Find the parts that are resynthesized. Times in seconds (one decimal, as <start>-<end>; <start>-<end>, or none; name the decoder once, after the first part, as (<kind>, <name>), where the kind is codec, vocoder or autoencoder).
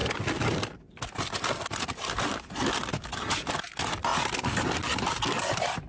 none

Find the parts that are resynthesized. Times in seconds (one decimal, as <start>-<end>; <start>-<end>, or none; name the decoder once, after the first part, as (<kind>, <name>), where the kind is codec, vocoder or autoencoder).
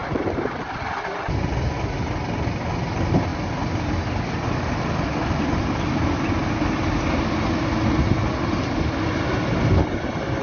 none